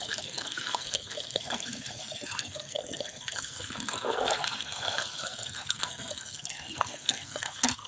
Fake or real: fake